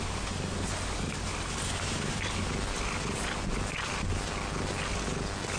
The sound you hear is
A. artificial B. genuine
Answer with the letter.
B